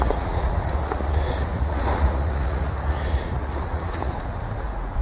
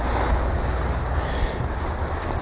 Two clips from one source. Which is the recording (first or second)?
second